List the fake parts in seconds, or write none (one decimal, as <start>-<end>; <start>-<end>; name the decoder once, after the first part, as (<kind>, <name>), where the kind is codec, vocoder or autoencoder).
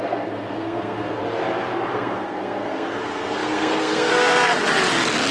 0.0-1.2 (codec, SNAC); 1.9-4.5